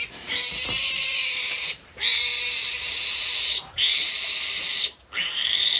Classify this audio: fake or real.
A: fake